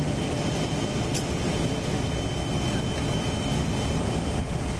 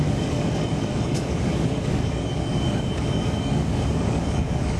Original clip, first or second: first